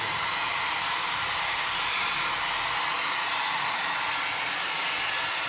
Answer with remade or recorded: recorded